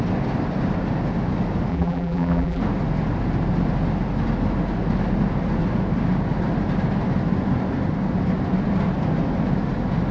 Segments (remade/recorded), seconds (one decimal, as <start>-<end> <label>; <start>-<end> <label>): 0.0-1.7 recorded; 1.7-2.6 remade; 2.6-10.1 recorded

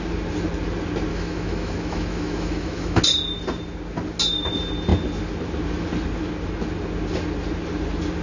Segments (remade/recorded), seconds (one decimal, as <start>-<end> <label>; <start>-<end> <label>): 0.0-1.1 recorded; 1.1-3.0 remade; 3.0-8.2 recorded

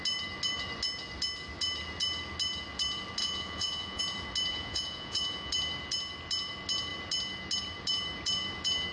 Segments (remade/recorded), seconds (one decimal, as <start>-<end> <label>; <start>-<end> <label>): 0.0-3.2 recorded; 3.2-4.0 remade; 4.0-4.5 recorded; 4.5-5.5 remade; 5.5-8.9 recorded

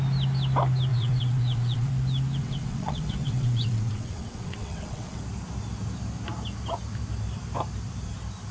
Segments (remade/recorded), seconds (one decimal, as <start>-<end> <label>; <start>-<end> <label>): 0.0-0.9 recorded; 0.9-1.9 remade; 1.9-2.4 recorded; 2.4-5.2 remade; 5.2-8.5 recorded

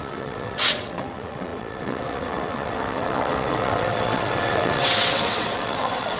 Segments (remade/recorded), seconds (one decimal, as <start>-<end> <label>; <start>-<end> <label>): 0.0-6.2 remade